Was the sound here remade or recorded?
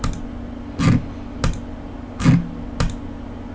recorded